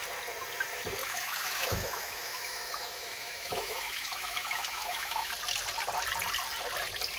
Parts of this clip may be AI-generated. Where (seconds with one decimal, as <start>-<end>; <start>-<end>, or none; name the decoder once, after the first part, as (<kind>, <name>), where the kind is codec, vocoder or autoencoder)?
1.0-5.3 (autoencoder, DAC-VAE)